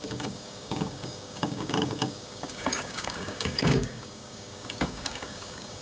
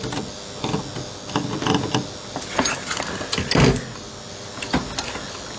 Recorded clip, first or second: second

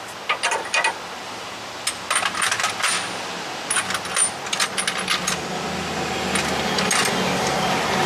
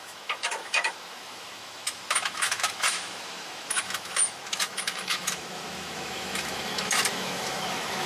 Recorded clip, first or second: first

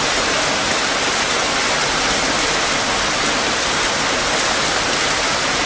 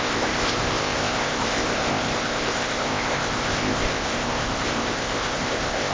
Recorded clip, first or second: first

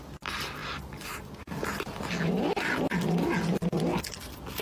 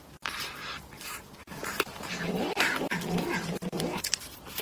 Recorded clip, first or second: first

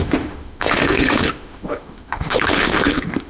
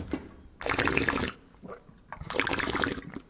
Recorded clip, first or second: second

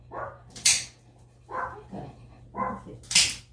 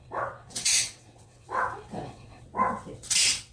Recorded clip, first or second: first